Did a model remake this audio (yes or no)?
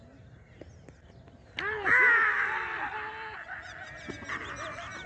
no